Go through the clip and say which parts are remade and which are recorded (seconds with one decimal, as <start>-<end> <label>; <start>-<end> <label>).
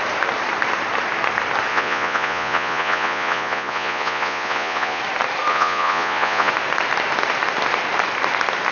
0.0-1.7 recorded; 1.7-5.0 remade; 5.0-5.5 recorded; 5.5-6.5 remade; 6.5-8.7 recorded